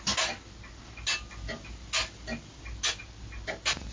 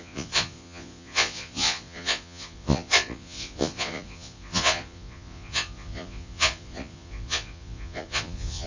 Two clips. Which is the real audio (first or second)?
first